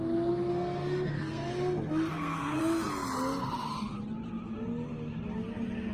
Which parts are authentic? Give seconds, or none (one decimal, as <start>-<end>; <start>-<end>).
0.0-0.5; 1.5-2.1; 2.6-5.9